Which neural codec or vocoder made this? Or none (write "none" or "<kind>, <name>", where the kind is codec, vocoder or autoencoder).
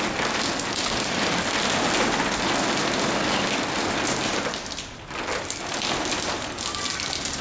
none